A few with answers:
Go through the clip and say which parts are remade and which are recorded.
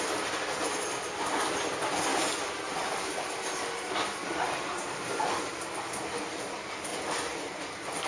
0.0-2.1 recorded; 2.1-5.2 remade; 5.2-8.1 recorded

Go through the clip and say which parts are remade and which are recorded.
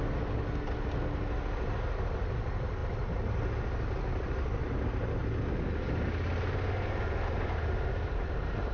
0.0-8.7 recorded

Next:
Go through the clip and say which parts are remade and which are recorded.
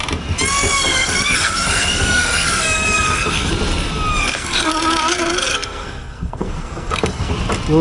0.0-0.7 recorded; 0.7-3.5 remade; 3.5-4.2 recorded; 4.2-4.7 remade; 4.7-5.5 recorded; 5.5-7.3 remade; 7.3-7.8 recorded